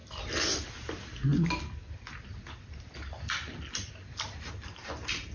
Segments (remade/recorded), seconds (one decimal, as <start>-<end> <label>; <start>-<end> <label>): 0.0-5.3 recorded